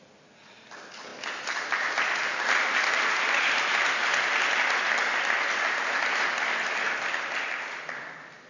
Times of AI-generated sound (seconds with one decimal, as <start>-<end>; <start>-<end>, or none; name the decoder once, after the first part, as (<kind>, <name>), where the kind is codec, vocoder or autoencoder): none